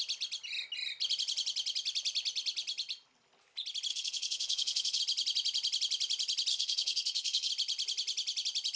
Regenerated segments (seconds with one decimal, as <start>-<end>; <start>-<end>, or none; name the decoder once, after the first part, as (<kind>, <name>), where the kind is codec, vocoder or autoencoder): 3.9-5.0 (codec, SNAC); 6.5-7.5